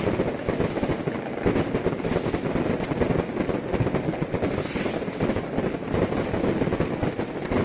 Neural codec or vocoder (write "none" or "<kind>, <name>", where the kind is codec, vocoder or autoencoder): none